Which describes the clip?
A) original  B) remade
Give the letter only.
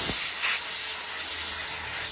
A